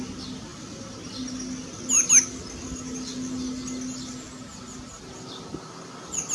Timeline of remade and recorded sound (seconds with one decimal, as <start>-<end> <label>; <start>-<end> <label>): 0.0-6.3 recorded